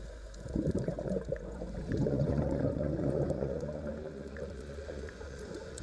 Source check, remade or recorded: remade